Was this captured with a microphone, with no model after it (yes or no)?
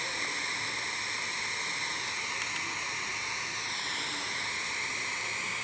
yes